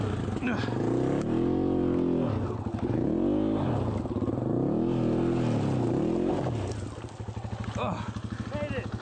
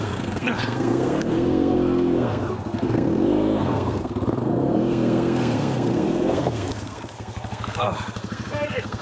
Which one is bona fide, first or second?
first